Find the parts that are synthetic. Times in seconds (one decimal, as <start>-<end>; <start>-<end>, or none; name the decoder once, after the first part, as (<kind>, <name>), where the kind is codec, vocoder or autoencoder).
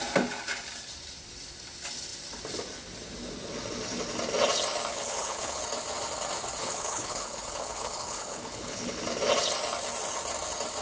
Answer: 4.9-5.6 (codec, HILCodec); 6.6-9.0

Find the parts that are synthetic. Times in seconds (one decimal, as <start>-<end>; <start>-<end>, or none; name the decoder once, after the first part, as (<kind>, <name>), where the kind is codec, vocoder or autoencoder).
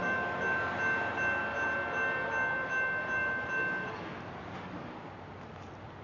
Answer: none